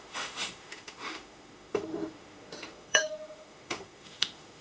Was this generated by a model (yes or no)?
yes